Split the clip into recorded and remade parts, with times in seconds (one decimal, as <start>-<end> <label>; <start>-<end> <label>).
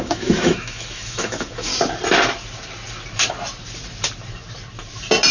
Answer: 0.0-1.7 remade; 1.7-5.3 recorded